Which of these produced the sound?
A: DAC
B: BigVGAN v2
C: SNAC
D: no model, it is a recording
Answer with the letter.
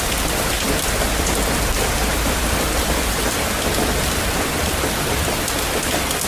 B